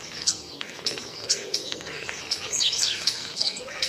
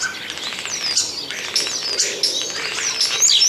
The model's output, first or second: first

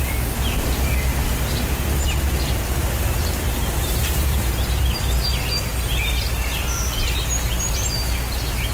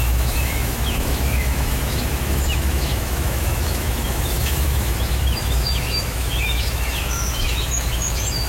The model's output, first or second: second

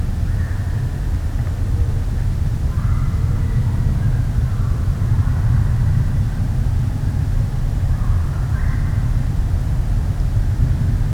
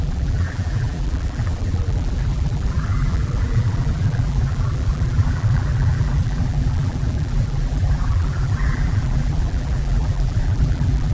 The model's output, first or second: second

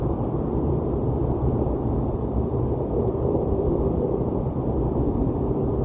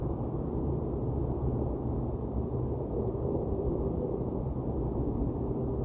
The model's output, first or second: first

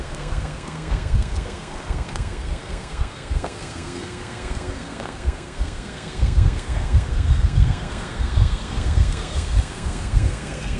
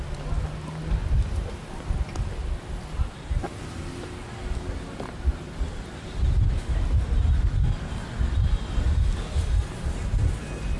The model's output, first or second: first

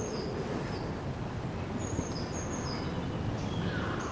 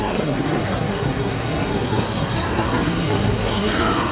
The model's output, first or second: second